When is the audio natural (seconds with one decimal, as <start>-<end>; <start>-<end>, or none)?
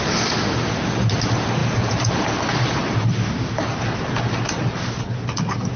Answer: 0.0-5.8